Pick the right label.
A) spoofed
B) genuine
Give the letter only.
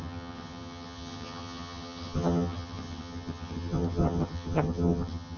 A